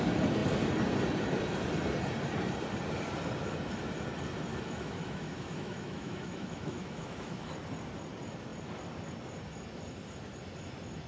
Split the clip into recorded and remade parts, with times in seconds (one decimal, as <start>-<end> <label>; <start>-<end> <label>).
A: 0.0-4.5 recorded; 4.5-7.5 remade; 7.5-11.1 recorded